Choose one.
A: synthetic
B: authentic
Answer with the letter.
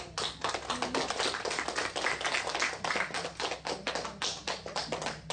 B